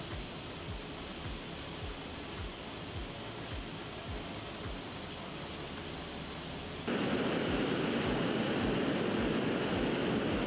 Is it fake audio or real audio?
real